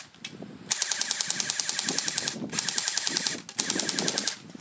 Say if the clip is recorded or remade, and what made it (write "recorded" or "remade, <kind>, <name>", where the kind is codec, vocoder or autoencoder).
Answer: recorded